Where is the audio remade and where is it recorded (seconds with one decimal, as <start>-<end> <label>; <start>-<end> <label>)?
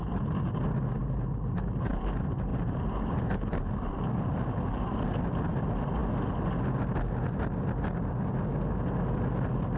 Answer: 0.0-1.0 recorded; 1.0-1.9 remade; 1.9-2.5 recorded; 2.5-5.0 remade; 5.0-9.8 recorded